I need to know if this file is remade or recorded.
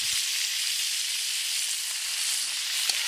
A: recorded